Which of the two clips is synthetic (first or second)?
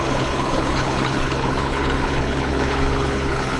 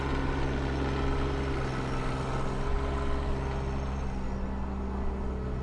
first